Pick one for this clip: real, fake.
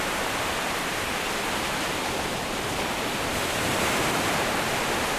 fake